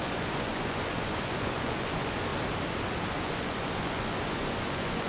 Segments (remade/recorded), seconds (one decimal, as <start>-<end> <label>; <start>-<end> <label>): 0.0-2.3 remade; 2.3-3.2 recorded; 3.2-5.1 remade